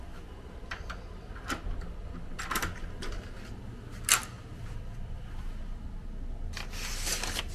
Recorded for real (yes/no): yes